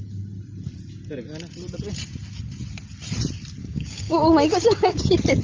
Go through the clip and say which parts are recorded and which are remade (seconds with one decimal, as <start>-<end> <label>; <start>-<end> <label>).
0.0-3.6 recorded; 3.6-5.0 remade; 5.0-5.4 recorded